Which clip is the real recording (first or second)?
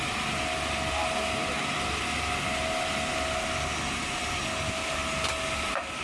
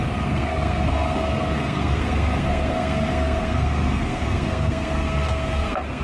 first